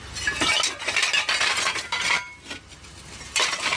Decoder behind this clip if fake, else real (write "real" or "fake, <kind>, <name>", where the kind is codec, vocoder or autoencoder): real